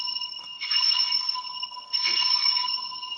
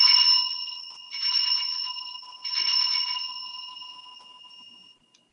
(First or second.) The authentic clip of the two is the second